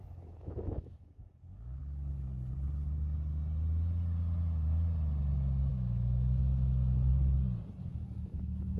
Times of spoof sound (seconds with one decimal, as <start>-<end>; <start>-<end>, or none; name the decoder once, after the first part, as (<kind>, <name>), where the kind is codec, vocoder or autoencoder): 0.0-1.8 (autoencoder, DAC-VAE); 5.7-7.1; 7.8-8.8